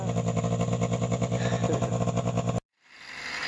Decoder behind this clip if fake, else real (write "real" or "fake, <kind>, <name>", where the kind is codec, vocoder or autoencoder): real